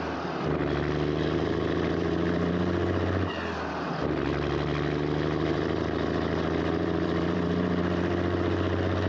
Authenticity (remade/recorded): remade